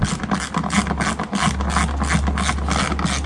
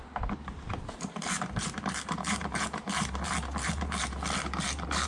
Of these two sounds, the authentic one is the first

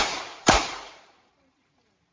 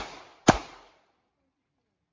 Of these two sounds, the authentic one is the second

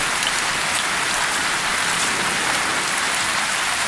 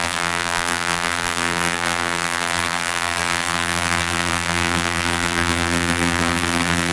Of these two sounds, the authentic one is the first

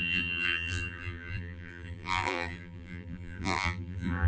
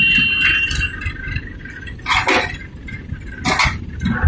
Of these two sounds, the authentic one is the second